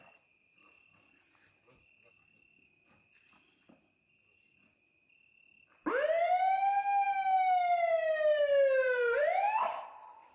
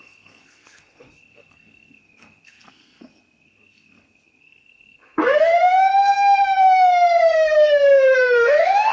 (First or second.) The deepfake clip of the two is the second